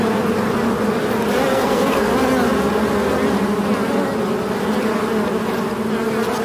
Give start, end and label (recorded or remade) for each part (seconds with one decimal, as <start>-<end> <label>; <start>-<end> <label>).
0.0-1.5 recorded; 1.5-2.1 remade; 2.1-6.4 recorded